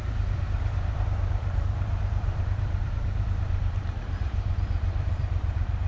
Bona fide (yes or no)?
no